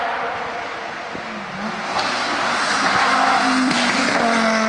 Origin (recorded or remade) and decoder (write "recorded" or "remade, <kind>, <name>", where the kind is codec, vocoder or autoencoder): recorded